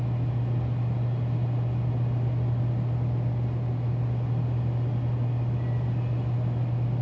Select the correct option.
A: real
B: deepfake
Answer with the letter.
A